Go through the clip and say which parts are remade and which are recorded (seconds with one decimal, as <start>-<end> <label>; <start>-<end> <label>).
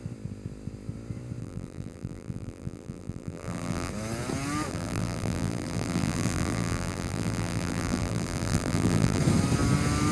0.0-1.4 recorded; 1.4-3.9 remade; 3.9-4.7 recorded; 4.7-9.2 remade; 9.2-10.1 recorded